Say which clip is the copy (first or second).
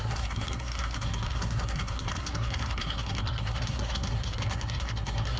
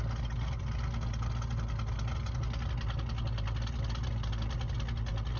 first